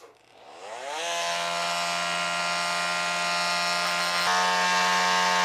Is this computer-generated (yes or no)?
no